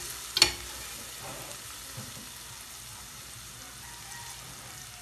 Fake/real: real